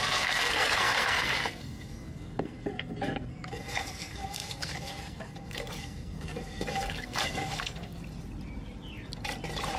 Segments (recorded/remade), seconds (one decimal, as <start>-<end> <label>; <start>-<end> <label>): 0.0-8.0 remade; 8.0-9.8 recorded